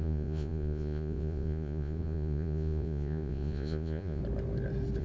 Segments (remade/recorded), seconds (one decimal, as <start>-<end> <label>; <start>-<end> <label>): 0.0-4.2 remade; 4.2-5.0 recorded